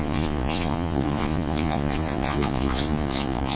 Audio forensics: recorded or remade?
remade